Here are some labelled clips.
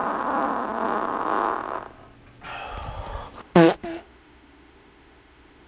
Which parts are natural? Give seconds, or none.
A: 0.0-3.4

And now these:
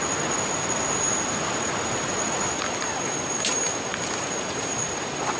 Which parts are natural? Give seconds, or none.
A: 0.0-5.4

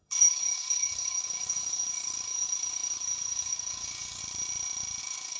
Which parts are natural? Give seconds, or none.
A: 4.2-5.0

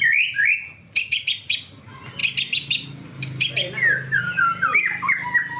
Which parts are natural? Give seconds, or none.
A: 0.0-5.6

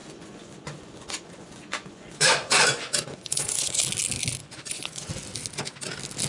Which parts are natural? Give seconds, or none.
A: 3.8-4.4; 5.1-6.3